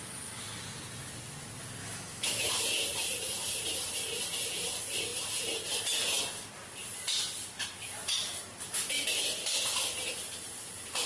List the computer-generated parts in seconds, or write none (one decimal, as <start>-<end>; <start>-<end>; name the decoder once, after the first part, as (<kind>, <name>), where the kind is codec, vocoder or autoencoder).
1.8-2.5 (autoencoder, DAC-VAE)